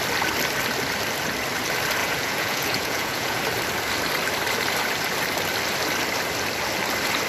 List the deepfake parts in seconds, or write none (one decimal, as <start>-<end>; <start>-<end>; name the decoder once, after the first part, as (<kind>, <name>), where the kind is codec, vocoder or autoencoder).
2.0-3.4 (vocoder, Vocos)